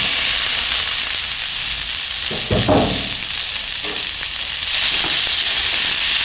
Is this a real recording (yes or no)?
yes